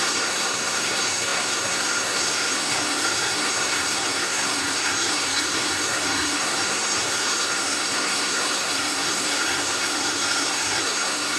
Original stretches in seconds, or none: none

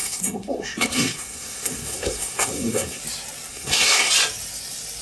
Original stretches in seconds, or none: 3.0-3.5; 4.1-5.0

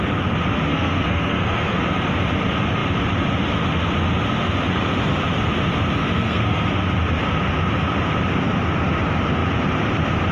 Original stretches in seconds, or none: 0.0-0.7; 1.8-6.0; 6.7-10.3

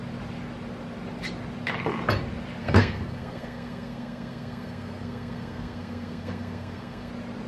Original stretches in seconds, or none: 0.0-2.6; 7.1-7.5

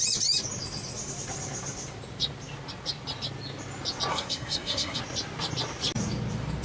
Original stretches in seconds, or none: 0.0-4.1; 5.0-6.6

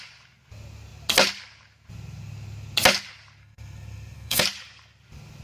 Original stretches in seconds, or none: 0.0-3.4; 4.4-5.4

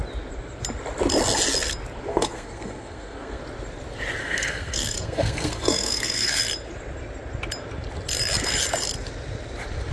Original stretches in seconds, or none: 0.0-2.1; 3.4-4.2; 6.4-9.9

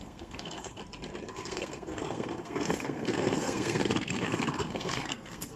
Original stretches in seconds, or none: 0.8-1.3